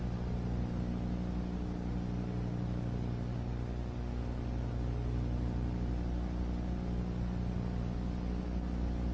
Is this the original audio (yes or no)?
yes